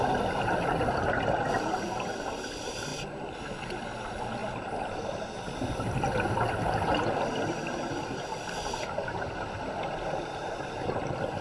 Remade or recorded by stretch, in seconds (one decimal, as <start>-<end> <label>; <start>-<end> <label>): 0.0-11.4 recorded